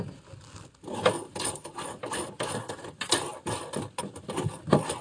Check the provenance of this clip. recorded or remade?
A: recorded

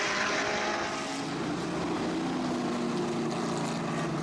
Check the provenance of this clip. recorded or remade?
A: recorded